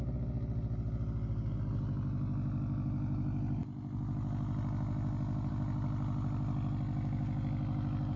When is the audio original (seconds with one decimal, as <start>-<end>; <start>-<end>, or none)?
0.0-8.2